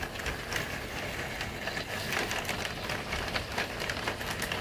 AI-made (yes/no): no